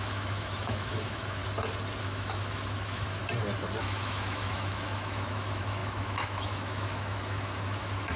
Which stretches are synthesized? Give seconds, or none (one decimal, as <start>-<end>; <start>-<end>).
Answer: 0.0-1.4; 2.0-3.2; 3.8-8.2